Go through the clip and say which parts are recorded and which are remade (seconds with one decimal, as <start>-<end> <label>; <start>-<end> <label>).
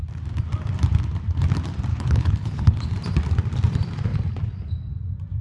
0.0-1.9 recorded; 1.9-2.9 remade; 2.9-5.4 recorded